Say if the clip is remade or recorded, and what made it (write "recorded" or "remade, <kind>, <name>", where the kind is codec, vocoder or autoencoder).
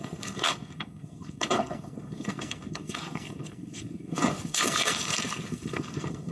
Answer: remade, codec, SNAC